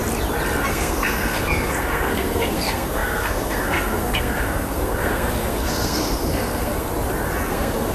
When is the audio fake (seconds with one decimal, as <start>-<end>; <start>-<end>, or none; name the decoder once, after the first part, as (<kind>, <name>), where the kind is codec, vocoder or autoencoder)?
0.7-6.9 (codec, SNAC); 7.5-7.9